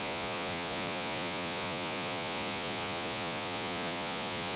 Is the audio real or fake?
fake